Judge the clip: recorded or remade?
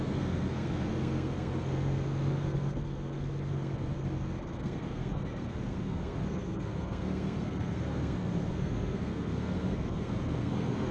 remade